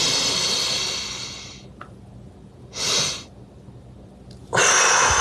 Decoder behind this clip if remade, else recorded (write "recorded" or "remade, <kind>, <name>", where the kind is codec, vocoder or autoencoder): recorded